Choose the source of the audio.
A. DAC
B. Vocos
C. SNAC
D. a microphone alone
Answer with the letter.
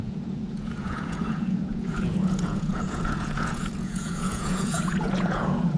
B